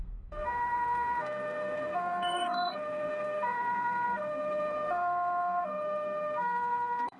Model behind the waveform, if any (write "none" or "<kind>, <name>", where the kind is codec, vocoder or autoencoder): codec, SNAC